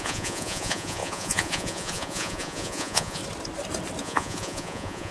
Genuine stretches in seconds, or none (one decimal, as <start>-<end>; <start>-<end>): 3.2-4.0